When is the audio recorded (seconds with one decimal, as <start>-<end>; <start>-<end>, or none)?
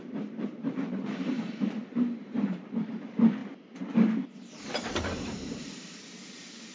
3.4-4.9